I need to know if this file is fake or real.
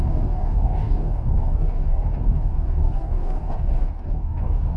fake